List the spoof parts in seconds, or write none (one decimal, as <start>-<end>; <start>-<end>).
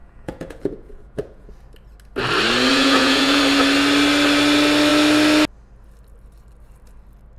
0.0-1.5; 2.7-3.4